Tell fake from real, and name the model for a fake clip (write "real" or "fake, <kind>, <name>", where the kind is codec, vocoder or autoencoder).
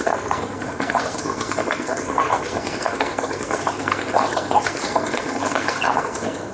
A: fake, codec, SNAC